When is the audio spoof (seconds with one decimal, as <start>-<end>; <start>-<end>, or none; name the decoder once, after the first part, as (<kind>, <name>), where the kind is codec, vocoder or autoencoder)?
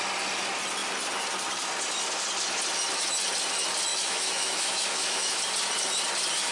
3.9-5.4 (autoencoder, DAC-VAE)